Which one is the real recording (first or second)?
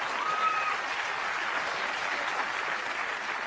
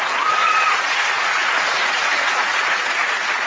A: first